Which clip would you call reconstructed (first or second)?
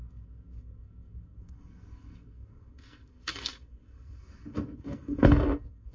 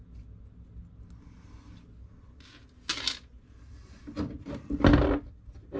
first